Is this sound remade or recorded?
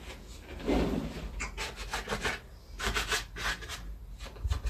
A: recorded